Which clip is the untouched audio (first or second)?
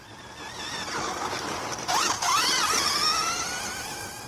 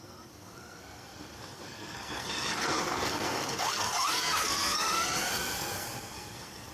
first